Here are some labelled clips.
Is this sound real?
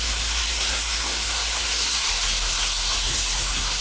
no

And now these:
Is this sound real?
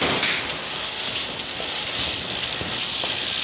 yes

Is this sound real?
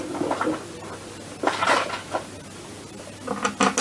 yes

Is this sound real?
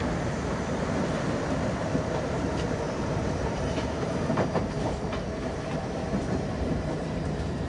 no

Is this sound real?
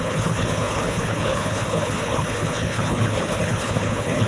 no